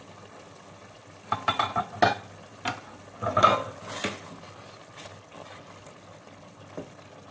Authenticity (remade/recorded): recorded